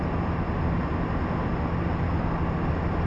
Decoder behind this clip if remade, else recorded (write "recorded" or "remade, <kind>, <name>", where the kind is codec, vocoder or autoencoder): recorded